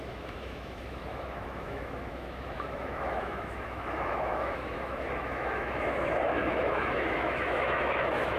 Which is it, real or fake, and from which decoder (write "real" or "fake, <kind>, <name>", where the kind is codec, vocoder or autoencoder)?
fake, autoencoder, DAC-VAE